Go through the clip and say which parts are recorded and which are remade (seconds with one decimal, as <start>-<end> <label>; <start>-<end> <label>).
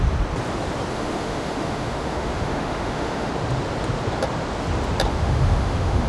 0.0-0.9 recorded; 0.9-3.3 remade; 3.3-5.1 recorded; 5.1-6.1 remade